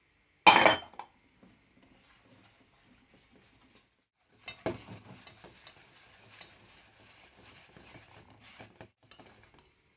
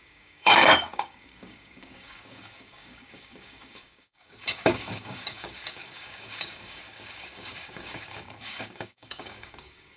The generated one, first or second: second